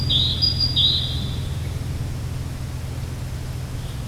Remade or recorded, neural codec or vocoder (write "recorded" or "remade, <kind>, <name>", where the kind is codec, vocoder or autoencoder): recorded